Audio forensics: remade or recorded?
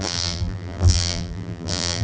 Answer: remade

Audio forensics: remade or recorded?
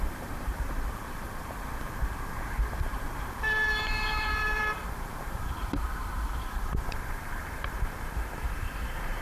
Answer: remade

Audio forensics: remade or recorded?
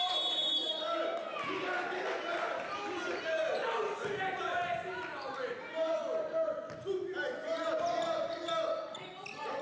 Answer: recorded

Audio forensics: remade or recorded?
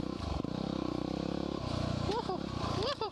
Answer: remade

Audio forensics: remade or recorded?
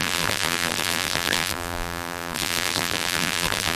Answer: remade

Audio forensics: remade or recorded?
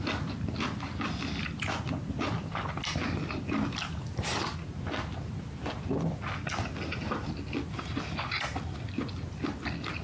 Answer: recorded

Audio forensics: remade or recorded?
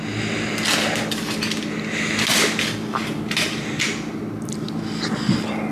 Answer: recorded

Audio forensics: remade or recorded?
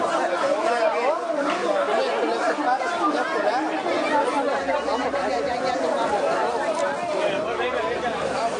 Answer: recorded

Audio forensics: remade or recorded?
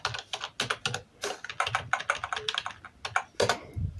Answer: recorded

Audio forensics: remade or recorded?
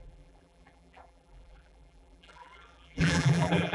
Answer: remade